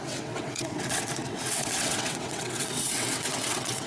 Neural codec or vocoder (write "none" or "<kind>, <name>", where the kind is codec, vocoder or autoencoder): vocoder, WaveNeXt